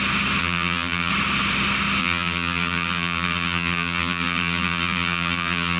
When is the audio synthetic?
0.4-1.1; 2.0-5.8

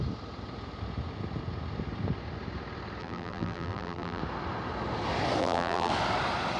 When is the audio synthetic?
3.0-4.2; 5.4-5.9

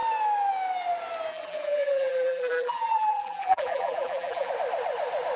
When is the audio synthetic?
1.3-4.5

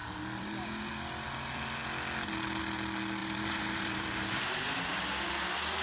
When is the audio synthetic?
0.0-0.9; 3.2-5.3

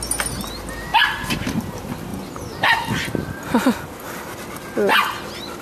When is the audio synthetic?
0.9-1.7